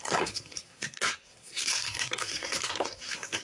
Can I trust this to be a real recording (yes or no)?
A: no